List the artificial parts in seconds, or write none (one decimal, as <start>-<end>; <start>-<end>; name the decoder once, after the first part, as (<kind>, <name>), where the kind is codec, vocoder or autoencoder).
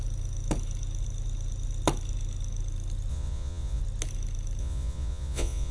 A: 3.1-3.8 (vocoder, Vocos); 4.6-5.7